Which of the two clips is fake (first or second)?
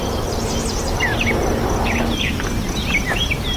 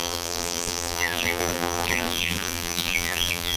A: second